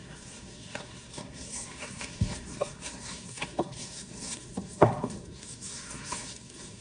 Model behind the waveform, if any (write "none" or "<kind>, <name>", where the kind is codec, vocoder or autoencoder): codec, SNAC